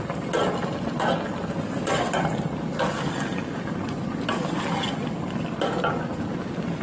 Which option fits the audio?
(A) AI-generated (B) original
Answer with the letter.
B